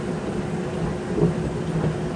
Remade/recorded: recorded